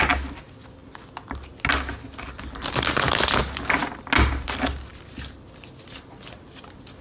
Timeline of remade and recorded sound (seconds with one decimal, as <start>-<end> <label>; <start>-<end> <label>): 0.0-7.0 recorded